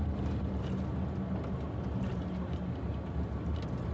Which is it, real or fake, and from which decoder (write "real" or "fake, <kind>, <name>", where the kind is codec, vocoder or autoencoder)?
real